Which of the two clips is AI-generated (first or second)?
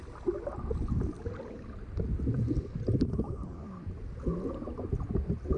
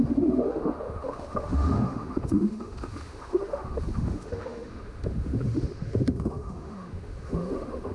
second